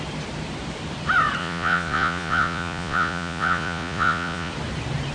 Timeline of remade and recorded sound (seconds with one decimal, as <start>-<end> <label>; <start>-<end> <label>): 0.0-1.4 recorded; 1.4-4.5 remade; 4.5-5.1 recorded